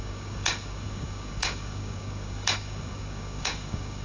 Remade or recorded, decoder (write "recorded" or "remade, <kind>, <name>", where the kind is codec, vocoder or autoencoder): remade, codec, DAC